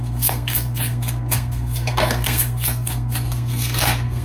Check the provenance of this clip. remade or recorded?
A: remade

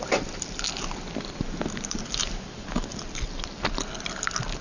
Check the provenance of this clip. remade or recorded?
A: recorded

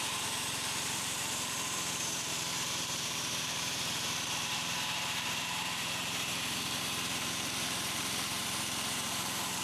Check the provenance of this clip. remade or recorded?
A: remade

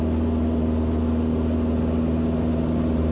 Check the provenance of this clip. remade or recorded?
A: recorded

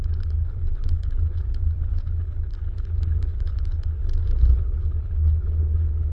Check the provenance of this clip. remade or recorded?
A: remade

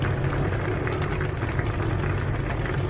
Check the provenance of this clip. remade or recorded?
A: recorded